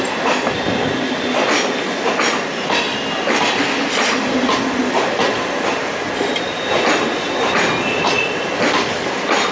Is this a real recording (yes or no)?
yes